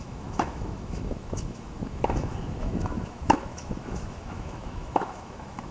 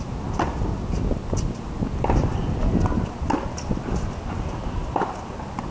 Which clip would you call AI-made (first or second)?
first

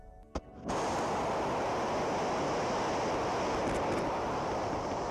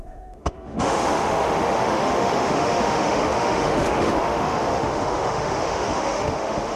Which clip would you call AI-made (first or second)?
second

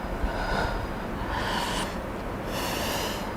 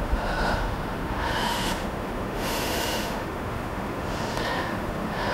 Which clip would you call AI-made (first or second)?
second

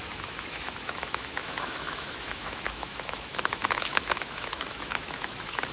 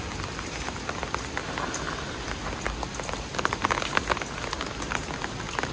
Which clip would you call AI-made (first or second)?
first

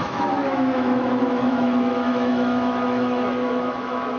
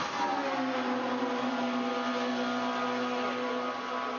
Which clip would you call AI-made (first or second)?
first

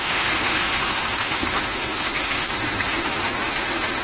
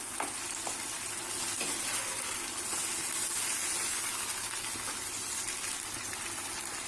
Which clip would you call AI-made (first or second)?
first